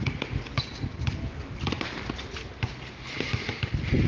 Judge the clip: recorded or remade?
recorded